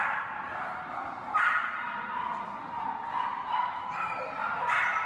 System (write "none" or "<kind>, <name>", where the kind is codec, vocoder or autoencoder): none